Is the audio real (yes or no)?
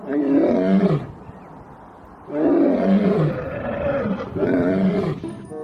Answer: no